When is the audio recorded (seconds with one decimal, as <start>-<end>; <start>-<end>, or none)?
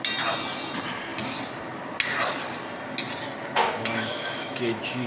0.0-3.6